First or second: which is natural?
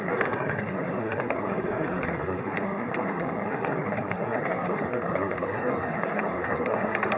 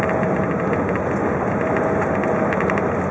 second